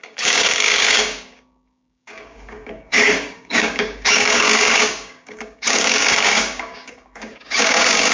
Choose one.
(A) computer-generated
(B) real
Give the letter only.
A